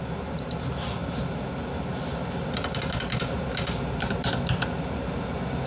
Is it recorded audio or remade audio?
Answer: recorded